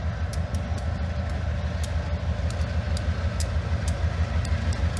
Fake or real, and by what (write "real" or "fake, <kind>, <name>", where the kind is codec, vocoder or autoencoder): real